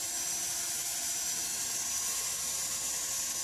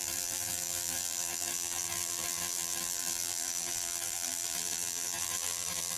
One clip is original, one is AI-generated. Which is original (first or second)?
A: first